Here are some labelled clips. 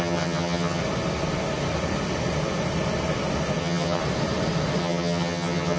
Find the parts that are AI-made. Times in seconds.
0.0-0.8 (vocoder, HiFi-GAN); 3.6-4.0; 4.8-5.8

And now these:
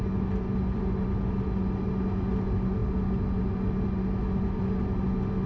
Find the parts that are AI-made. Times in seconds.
none

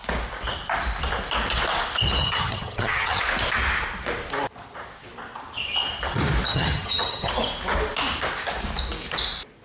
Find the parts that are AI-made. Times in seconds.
2.2-3.2 (vocoder, HiFi-GAN); 6.5-7.3

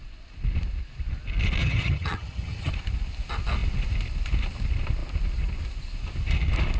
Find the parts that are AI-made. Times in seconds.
1.6-2.7 (vocoder, HiFi-GAN)

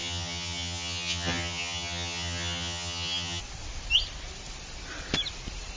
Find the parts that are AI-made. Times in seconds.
0.0-3.4 (vocoder, HiFi-GAN)

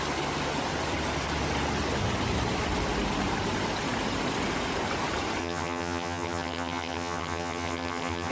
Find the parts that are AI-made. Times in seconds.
5.4-8.3 (vocoder, HiFi-GAN)